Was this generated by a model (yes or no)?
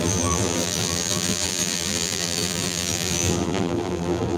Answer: yes